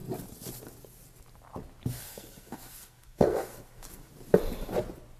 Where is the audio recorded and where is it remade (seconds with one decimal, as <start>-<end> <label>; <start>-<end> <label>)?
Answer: 0.0-2.0 recorded; 2.0-4.1 remade; 4.1-5.2 recorded